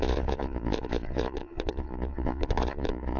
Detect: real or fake fake